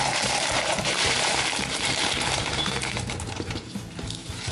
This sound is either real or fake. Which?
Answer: fake